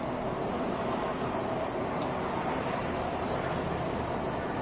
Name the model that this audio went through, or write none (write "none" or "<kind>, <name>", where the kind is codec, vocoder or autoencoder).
vocoder, BigVGAN v2